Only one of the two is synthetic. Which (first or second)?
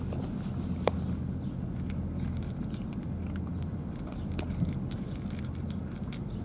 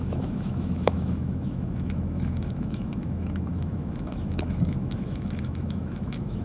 second